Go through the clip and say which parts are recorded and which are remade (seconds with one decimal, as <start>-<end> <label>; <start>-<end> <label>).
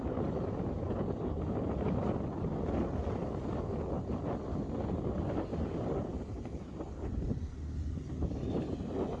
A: 0.0-9.2 recorded